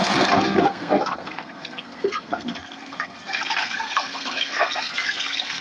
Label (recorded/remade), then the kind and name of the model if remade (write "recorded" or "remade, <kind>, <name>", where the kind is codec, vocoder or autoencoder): remade, codec, SNAC